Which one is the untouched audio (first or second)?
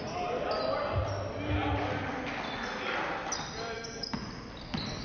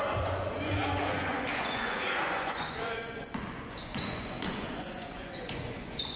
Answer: first